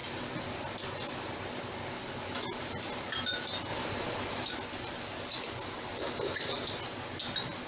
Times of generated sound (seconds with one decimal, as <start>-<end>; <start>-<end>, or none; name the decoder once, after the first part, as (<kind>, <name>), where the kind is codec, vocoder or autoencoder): 3.7-4.5 (vocoder, BigVGAN v2)